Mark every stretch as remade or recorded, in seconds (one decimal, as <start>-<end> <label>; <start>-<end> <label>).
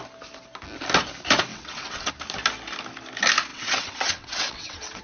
0.0-1.5 recorded; 1.5-2.1 remade; 2.1-3.5 recorded; 3.5-5.0 remade